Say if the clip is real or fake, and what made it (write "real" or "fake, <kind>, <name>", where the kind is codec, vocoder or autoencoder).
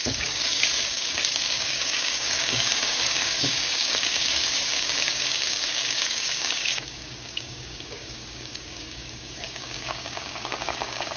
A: fake, codec, DAC